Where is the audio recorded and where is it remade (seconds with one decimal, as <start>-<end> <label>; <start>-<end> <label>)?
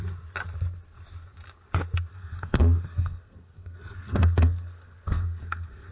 0.0-2.1 recorded; 2.1-5.9 remade